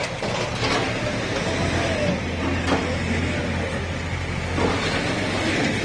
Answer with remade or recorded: recorded